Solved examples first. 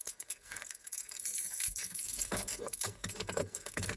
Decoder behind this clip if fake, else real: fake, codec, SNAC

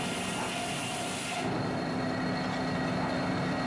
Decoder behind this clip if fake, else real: real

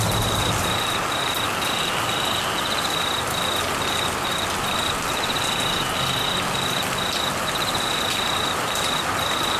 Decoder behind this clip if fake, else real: real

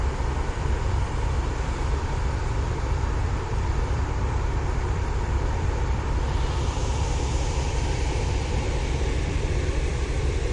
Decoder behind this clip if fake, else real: fake, vocoder, BigVGAN v2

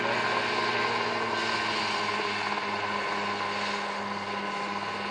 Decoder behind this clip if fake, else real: real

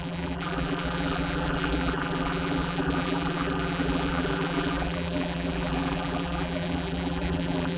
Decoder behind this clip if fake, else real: fake, vocoder, BigVGAN v2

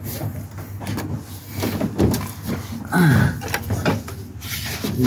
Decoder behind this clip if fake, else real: real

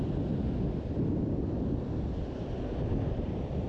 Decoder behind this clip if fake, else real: real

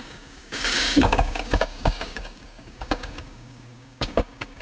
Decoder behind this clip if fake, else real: fake, codec, DAC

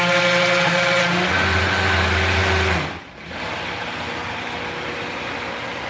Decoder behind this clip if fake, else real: real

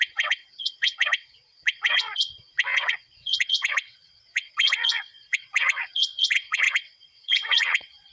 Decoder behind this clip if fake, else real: fake, vocoder, WaveNeXt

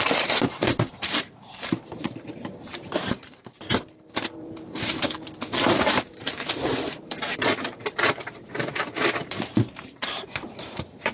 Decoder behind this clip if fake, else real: fake, vocoder, BigVGAN v2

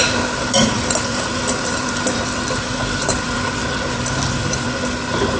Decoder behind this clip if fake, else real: fake, vocoder, BigVGAN v2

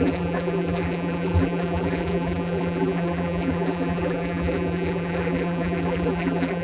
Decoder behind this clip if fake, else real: fake, vocoder, BigVGAN v2